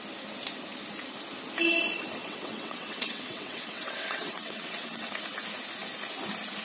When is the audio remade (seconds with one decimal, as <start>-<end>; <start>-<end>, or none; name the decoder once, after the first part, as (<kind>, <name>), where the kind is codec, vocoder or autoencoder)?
2.2-5.1 (vocoder, WaveNeXt)